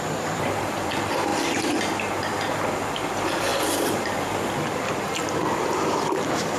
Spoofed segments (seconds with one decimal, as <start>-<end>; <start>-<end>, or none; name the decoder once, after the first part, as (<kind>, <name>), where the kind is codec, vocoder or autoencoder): 0.0-1.3 (vocoder, BigVGAN v2); 2.2-6.6